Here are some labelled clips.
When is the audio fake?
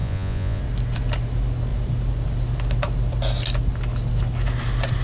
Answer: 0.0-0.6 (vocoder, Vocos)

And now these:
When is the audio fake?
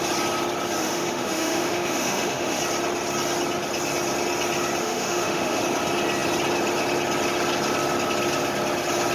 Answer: 0.8-2.6 (autoencoder, DAC-VAE); 4.8-5.6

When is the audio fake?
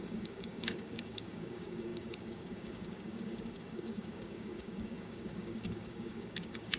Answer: 0.0-6.8 (codec, DAC)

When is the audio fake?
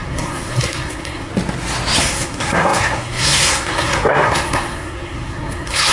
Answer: 0.0-1.3 (codec, SNAC); 2.0-5.9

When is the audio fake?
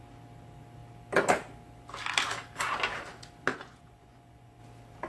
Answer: 3.5-4.6 (vocoder, Vocos)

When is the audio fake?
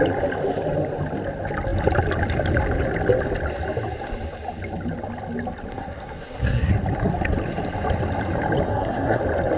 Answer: 5.7-6.7 (codec, SNAC); 8.7-9.2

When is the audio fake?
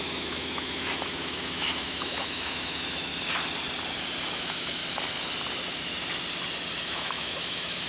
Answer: 0.0-3.1 (autoencoder, DAC-VAE); 4.3-4.8; 6.8-7.9